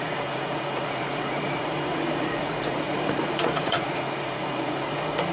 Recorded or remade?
remade